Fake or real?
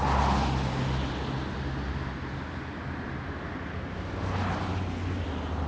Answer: real